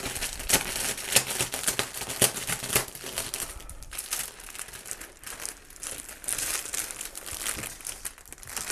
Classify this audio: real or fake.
real